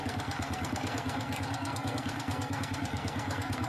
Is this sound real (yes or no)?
no